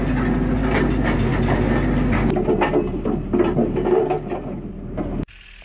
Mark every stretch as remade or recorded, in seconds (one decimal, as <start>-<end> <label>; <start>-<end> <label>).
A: 0.0-5.6 recorded